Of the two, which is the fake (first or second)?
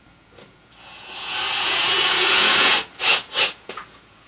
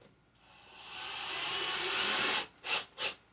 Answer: first